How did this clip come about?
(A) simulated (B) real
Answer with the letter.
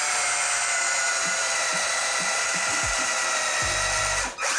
B